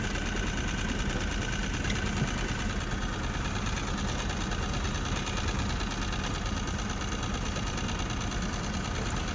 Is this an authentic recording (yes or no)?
yes